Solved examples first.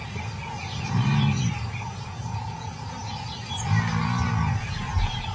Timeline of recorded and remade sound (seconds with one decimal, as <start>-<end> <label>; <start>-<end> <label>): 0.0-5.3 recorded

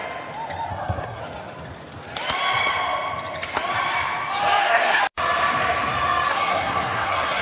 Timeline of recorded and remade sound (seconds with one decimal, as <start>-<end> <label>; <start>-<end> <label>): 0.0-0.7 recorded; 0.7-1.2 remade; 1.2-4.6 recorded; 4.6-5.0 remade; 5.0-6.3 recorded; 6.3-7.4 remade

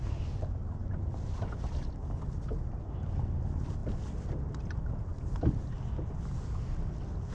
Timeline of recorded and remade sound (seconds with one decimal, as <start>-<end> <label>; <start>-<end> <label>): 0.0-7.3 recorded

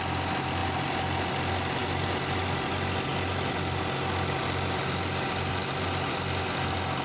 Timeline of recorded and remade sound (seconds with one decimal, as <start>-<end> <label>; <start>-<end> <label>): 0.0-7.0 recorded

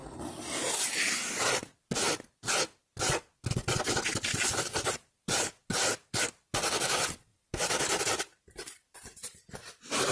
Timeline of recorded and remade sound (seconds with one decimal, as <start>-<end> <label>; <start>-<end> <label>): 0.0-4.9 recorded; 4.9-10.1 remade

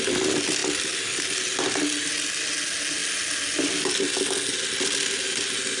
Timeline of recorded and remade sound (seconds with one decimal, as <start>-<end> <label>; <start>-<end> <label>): 0.0-5.8 recorded